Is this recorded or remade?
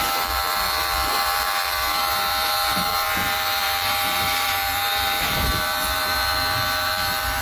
remade